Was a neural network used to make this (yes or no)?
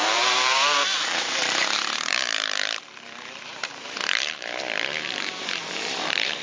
yes